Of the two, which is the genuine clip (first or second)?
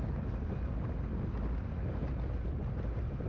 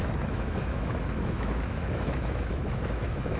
first